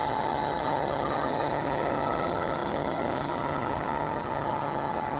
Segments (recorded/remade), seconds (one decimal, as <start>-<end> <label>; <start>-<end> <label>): 0.0-5.2 remade